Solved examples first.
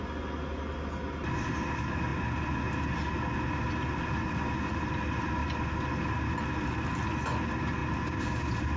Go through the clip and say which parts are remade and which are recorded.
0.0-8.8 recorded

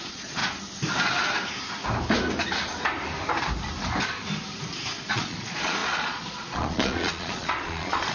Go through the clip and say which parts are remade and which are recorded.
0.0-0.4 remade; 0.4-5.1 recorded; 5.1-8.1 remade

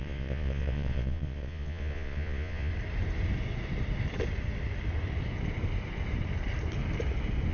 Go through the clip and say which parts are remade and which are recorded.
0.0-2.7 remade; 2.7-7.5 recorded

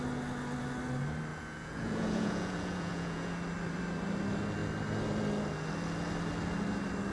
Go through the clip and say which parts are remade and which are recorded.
0.0-1.3 recorded; 1.3-3.3 remade; 3.3-7.1 recorded

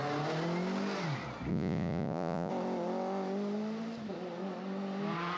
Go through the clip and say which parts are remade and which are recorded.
0.0-1.5 recorded; 1.5-2.5 remade; 2.5-5.4 recorded

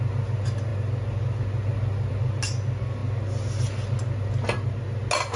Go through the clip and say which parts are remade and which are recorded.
0.0-5.4 recorded

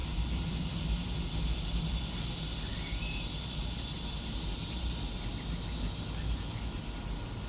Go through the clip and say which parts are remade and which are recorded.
0.0-7.5 recorded